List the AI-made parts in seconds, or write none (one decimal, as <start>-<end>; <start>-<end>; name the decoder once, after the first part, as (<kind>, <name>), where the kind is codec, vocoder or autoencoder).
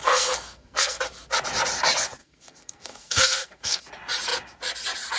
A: 0.0-1.0 (codec, SNAC); 2.2-3.8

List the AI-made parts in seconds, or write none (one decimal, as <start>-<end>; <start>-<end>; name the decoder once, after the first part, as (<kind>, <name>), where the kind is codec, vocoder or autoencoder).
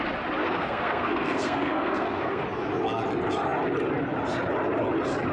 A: 0.4-2.4 (codec, SNAC)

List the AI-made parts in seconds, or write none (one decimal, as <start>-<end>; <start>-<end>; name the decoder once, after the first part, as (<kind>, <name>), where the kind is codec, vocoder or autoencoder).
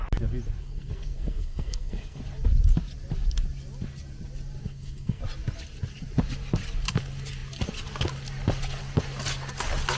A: 0.6-2.2 (codec, SNAC); 4.6-5.2